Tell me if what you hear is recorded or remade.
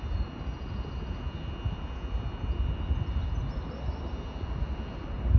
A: recorded